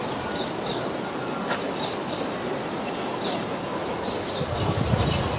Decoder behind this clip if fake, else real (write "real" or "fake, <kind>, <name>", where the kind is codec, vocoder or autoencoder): real